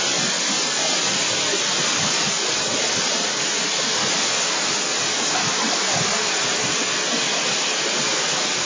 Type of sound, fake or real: real